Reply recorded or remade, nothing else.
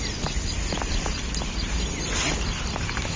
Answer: recorded